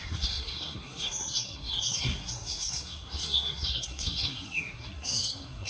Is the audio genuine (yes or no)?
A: no